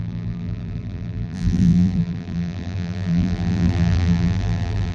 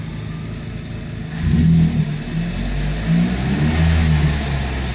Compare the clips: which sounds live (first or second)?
second